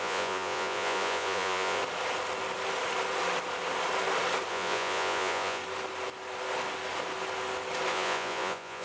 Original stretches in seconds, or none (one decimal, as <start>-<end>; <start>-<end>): 1.8-4.5; 5.6-7.9